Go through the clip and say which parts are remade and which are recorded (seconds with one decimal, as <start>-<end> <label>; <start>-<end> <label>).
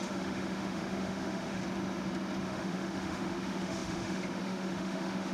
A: 0.0-1.6 remade; 1.6-2.4 recorded; 2.4-5.3 remade